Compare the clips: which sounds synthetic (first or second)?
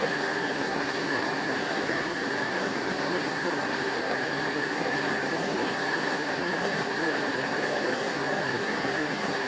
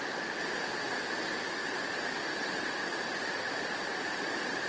first